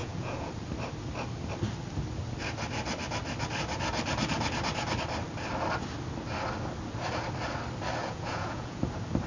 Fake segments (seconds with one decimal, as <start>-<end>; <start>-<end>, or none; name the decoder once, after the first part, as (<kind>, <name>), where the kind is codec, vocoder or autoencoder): 0.0-0.5 (vocoder, Vocos); 8.0-8.8